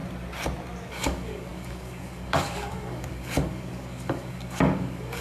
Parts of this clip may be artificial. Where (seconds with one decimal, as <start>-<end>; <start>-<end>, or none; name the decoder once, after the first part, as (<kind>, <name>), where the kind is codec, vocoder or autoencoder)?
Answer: 0.9-5.2 (codec, DAC)